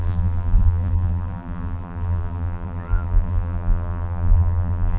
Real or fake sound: fake